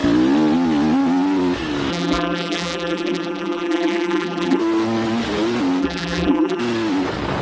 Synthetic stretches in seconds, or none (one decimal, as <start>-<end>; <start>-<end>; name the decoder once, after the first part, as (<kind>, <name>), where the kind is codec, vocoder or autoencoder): 1.9-4.6 (vocoder, BigVGAN v2); 5.8-6.6